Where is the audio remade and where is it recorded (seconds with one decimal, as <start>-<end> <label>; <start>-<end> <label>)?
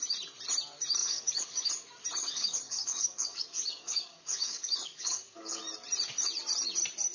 0.0-1.0 recorded; 1.0-1.7 remade; 1.7-2.2 recorded; 2.2-5.6 remade; 5.6-7.1 recorded